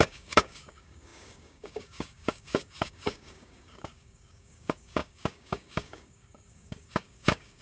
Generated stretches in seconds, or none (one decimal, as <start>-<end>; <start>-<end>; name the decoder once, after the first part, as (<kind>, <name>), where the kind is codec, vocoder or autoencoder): 0.0-7.6 (codec, DAC)